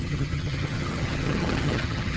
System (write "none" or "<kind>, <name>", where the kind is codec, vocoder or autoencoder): vocoder, HiFi-GAN